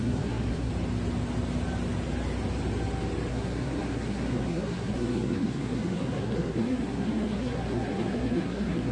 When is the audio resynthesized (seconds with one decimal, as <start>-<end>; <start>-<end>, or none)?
0.0-0.7; 3.3-8.9